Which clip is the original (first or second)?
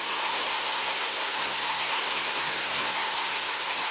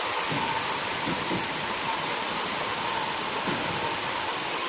second